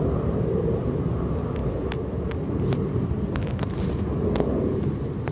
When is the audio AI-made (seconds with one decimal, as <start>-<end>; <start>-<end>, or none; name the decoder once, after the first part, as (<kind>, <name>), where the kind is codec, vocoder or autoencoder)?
none